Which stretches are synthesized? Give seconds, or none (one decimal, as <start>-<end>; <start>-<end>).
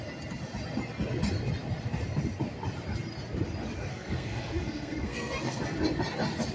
3.9-5.6